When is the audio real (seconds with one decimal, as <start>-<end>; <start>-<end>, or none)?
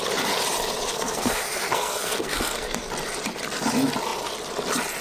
0.0-0.9; 2.9-5.0